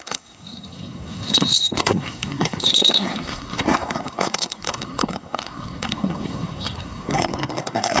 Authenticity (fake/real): fake